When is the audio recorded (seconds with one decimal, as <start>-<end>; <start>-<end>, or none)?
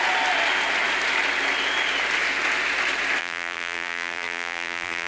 0.0-3.2